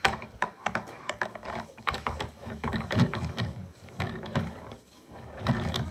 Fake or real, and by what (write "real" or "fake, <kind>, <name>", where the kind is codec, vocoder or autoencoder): fake, codec, DAC